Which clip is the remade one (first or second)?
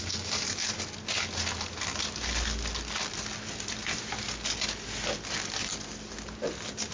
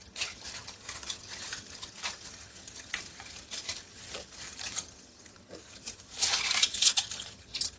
second